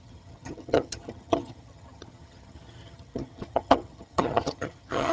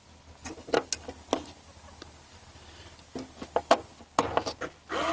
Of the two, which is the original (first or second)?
second